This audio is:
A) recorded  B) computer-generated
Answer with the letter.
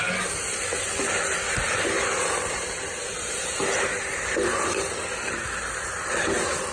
A